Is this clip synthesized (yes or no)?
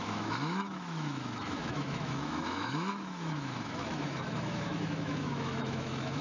yes